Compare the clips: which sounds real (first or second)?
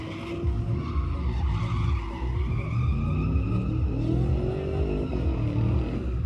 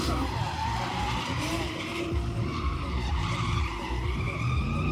first